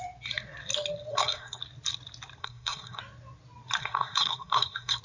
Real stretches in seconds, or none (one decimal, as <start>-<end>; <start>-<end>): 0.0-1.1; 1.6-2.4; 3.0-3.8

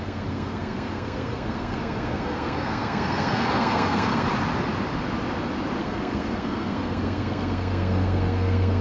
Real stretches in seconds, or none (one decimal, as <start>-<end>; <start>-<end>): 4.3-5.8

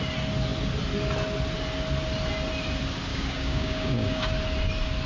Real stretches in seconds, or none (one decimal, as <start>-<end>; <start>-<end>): 0.0-3.1; 4.3-5.1

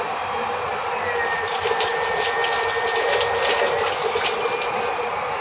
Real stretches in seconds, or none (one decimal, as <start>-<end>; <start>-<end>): 0.7-1.3; 2.4-4.7

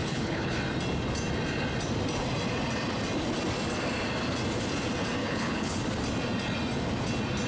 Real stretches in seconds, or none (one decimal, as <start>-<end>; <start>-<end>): 0.6-5.2; 5.8-7.5

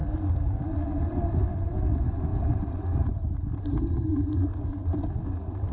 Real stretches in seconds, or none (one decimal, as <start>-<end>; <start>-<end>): 0.0-2.3; 4.5-5.7

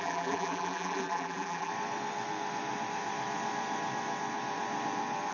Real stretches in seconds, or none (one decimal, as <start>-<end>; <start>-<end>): 1.7-5.3